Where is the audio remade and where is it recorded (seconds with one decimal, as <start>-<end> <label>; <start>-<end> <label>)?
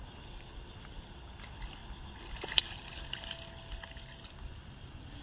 0.0-5.2 recorded